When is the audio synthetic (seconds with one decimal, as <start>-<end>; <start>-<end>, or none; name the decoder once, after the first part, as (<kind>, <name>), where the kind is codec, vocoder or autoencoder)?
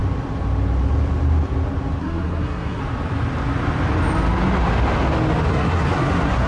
2.0-2.8 (codec, SNAC); 5.5-6.5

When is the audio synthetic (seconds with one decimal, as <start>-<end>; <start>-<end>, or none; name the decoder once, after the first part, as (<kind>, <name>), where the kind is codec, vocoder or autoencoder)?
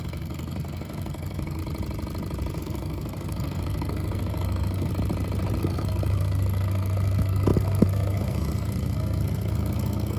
0.0-1.6 (codec, SNAC); 2.6-4.9; 5.6-10.2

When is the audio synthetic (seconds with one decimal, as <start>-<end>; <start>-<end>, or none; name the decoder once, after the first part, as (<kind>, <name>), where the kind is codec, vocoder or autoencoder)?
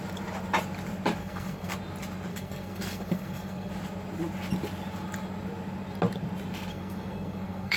1.2-1.7 (codec, SNAC); 2.3-3.7; 6.7-7.8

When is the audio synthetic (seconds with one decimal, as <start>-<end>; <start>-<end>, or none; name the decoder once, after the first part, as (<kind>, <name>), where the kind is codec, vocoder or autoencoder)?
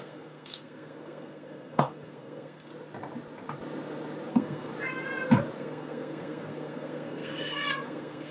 0.0-2.7 (codec, SNAC); 4.3-4.7; 5.6-8.3